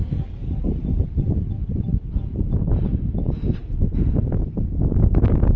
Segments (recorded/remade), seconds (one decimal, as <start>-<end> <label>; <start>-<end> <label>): 0.0-5.6 recorded